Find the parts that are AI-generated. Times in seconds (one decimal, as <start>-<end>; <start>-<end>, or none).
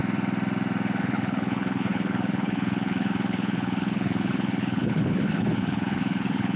1.0-6.6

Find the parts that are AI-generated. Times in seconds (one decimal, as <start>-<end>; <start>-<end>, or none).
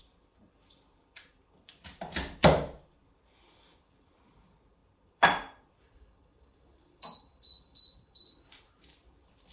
0.0-4.3; 4.8-5.9; 7.3-8.6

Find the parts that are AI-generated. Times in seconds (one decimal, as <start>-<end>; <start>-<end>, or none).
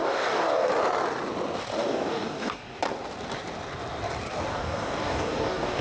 0.0-0.7; 1.8-2.8; 4.5-5.8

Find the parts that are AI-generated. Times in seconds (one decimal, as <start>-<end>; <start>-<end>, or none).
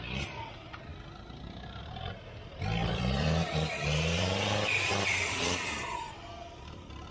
2.8-6.6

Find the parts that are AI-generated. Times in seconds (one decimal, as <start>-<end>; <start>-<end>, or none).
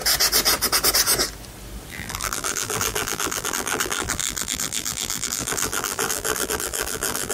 1.9-7.3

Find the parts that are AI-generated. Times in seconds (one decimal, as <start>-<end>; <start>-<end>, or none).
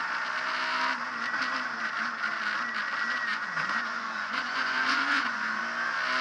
3.3-5.6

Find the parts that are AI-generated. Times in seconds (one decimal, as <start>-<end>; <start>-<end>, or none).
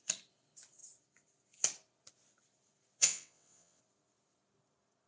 3.0-3.8